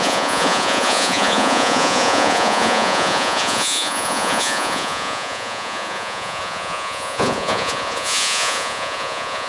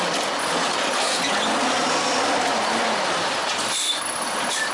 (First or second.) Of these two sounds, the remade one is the first